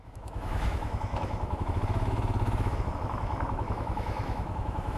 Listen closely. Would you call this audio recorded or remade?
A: remade